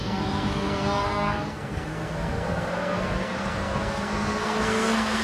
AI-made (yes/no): yes